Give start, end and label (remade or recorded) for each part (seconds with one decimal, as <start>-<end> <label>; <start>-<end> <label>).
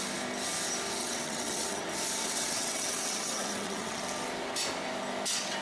0.0-1.0 recorded; 1.0-1.8 remade; 1.8-2.2 recorded; 2.2-4.0 remade; 4.0-5.6 recorded